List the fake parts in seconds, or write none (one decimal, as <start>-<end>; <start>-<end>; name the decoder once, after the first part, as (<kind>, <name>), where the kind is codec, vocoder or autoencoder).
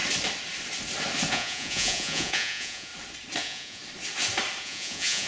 1.3-2.9 (vocoder, Vocos); 3.4-3.8; 4.6-5.3